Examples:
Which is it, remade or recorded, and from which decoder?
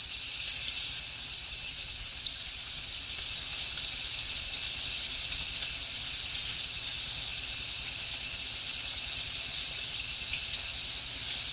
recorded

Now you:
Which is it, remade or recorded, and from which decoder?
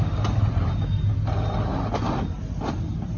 recorded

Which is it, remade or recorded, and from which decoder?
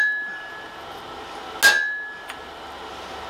recorded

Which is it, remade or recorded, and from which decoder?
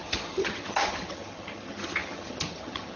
remade, vocoder, HiFi-GAN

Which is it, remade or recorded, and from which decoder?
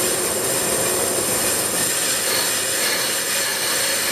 recorded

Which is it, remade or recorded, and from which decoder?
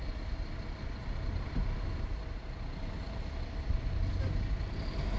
recorded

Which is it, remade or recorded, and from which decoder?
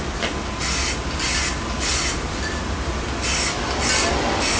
recorded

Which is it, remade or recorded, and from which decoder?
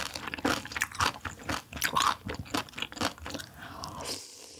recorded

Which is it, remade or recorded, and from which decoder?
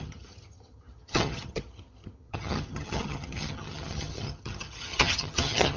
remade, vocoder, HiFi-GAN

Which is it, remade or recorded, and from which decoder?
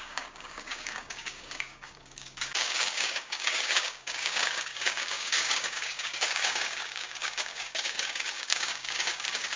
remade, codec, DAC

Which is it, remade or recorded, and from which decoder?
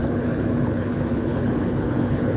remade, codec, HILCodec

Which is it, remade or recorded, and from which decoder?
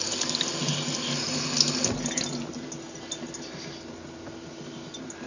recorded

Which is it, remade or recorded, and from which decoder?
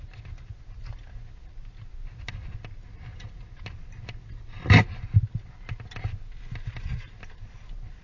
recorded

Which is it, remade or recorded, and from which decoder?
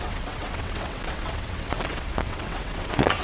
remade, vocoder, WaveNeXt